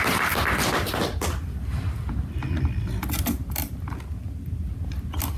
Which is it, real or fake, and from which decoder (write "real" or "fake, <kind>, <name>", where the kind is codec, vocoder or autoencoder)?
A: real